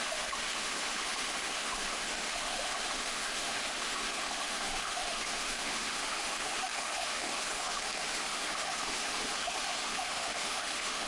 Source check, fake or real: fake